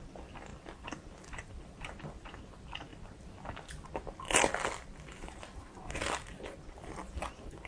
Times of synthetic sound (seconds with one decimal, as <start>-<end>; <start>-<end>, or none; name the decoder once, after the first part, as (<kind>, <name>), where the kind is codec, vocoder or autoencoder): 0.5-2.1 (vocoder, BigVGAN v2)